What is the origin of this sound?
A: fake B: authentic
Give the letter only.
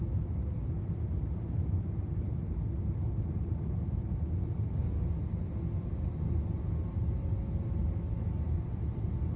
B